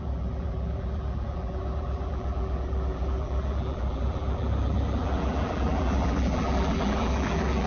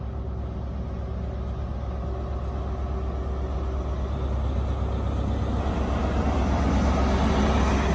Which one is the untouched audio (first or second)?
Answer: second